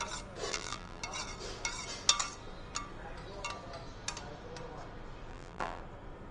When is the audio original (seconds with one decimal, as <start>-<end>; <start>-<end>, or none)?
0.0-0.5; 1.0-5.3; 5.8-6.3